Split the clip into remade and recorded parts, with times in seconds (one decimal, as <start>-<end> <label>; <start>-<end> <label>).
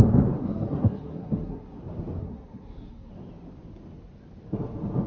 0.0-0.4 recorded; 0.4-1.8 remade; 1.8-2.2 recorded; 2.2-3.1 remade; 3.1-5.1 recorded